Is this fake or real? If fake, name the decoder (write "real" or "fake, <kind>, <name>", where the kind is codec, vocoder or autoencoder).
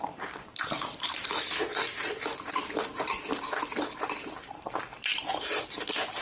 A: fake, vocoder, BigVGAN v2